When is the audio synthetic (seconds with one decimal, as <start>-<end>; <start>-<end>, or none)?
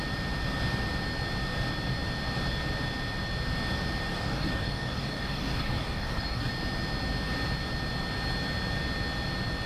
4.1-6.5